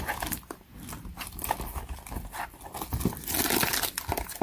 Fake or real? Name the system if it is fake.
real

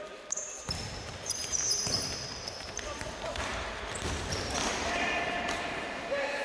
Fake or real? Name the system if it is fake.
fake, vocoder, BigVGAN v2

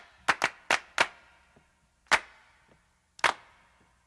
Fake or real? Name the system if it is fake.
real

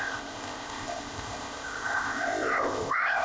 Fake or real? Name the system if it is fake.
fake, codec, ZipCodec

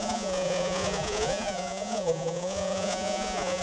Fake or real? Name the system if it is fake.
fake, vocoder, Vocos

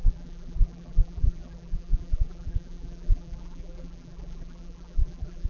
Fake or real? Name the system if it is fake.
fake, vocoder, BigVGAN v2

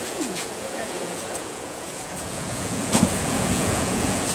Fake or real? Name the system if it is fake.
fake, vocoder, Vocos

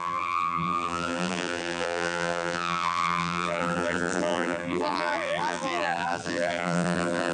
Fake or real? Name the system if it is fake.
fake, vocoder, BigVGAN v2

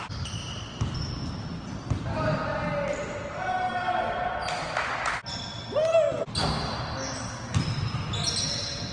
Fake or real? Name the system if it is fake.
real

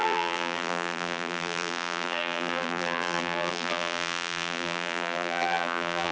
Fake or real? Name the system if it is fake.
fake, vocoder, BigVGAN v2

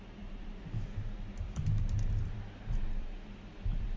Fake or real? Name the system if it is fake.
fake, vocoder, BigVGAN v2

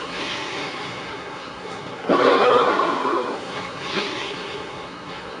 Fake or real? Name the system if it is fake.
fake, codec, SNAC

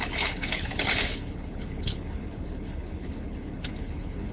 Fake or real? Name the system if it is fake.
fake, codec, HILCodec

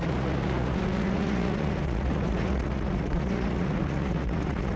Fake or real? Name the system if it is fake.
fake, vocoder, Vocos